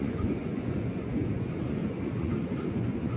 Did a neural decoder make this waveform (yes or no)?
yes